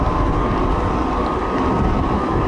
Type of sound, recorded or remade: recorded